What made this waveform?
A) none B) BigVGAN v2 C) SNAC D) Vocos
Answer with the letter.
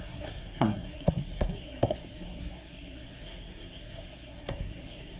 C